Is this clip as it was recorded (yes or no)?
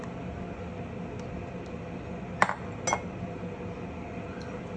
yes